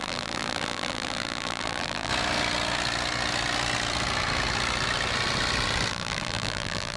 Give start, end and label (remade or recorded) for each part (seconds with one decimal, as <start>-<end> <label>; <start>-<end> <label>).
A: 0.0-2.1 remade; 2.1-5.9 recorded; 5.9-7.0 remade